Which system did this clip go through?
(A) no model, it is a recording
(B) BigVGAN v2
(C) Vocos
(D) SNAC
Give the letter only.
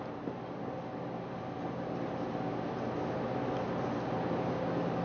A